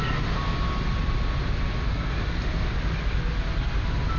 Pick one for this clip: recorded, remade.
recorded